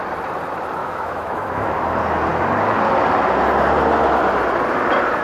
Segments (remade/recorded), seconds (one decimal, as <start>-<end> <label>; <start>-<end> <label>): 0.0-0.8 recorded; 0.8-1.8 remade; 1.8-5.2 recorded